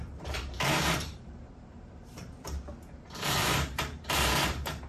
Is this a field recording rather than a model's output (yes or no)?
no